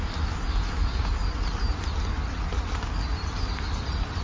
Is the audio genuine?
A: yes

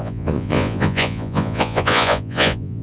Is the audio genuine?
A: no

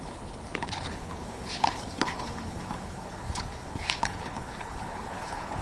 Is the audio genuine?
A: no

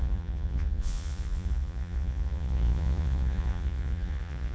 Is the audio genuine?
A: no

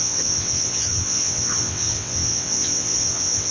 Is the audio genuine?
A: no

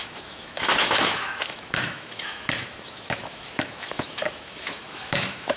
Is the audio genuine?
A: no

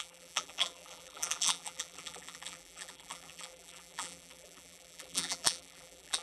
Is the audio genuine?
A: no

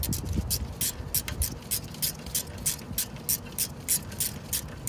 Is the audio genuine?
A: yes